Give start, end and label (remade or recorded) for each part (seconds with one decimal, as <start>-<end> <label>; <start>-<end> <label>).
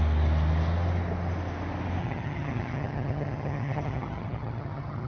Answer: 0.0-2.0 recorded; 2.0-5.1 remade